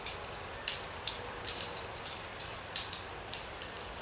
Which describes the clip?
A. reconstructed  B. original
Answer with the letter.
A